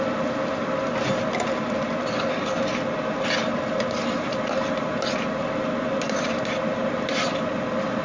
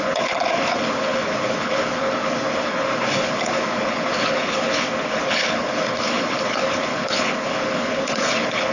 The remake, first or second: second